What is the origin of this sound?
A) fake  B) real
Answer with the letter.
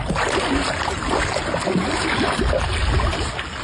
B